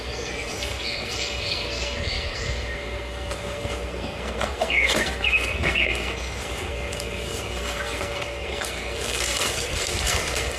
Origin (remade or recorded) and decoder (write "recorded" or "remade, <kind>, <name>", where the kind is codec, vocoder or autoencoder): remade, codec, SNAC